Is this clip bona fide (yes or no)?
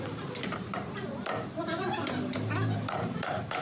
no